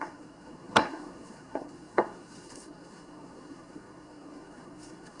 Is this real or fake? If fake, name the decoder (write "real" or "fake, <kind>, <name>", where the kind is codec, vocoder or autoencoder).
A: fake, codec, SNAC